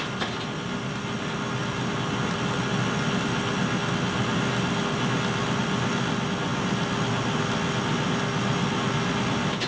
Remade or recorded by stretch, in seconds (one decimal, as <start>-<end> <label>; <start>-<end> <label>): 0.0-9.7 recorded